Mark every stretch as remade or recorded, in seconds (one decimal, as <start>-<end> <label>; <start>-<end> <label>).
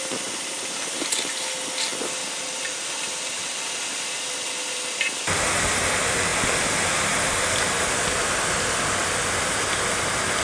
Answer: 0.0-10.4 recorded